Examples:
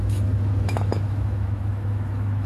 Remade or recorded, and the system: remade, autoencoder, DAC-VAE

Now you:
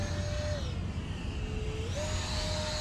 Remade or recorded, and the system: recorded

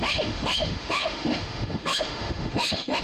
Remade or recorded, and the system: remade, autoencoder, DAC-VAE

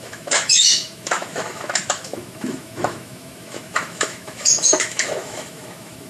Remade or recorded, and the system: remade, autoencoder, DAC-VAE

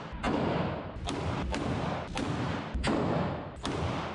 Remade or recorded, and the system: recorded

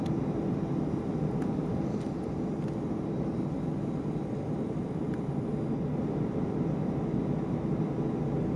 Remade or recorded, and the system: recorded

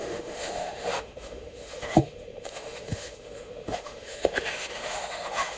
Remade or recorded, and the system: remade, autoencoder, DAC-VAE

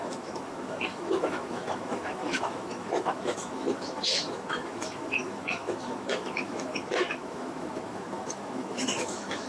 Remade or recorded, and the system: remade, autoencoder, DAC-VAE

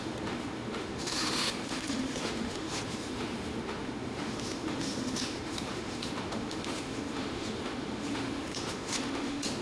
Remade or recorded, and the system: remade, autoencoder, DAC-VAE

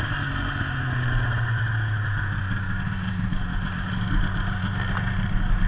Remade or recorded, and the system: recorded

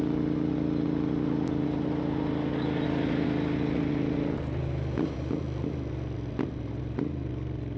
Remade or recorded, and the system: recorded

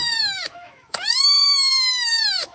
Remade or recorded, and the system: remade, autoencoder, DAC-VAE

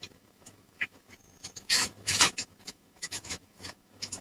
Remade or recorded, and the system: remade, autoencoder, DAC-VAE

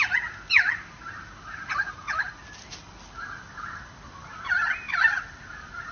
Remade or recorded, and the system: recorded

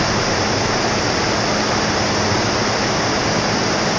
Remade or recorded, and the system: recorded